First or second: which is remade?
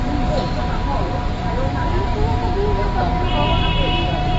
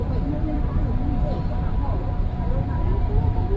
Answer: second